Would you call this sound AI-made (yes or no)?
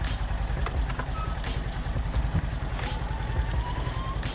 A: no